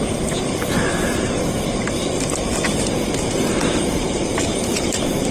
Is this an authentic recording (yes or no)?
no